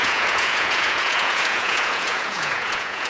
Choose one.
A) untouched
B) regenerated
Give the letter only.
B